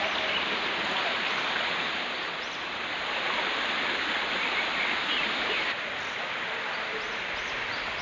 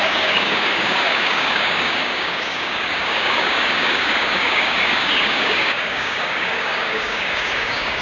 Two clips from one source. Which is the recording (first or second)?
first